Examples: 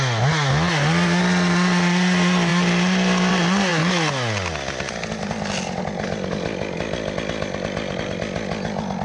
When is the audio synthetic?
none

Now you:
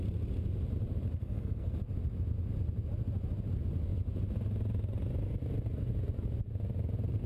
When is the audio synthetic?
1.2-1.8

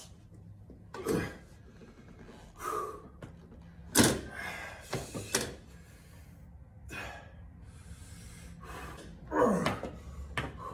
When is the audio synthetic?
none

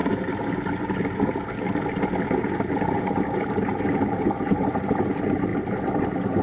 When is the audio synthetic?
none